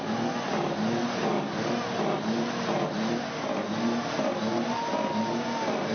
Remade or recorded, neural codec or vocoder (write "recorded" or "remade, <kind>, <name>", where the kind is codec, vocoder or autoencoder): recorded